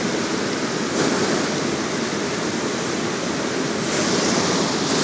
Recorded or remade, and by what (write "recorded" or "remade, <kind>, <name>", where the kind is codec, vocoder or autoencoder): recorded